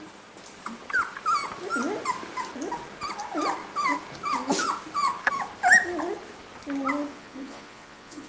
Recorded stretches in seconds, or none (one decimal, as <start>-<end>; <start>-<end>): 0.0-7.1